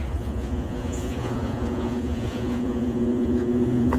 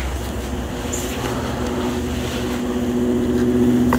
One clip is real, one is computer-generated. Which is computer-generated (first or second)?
first